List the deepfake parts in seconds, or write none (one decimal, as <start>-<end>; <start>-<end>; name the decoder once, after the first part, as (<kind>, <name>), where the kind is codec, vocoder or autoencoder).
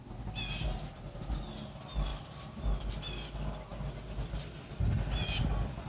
none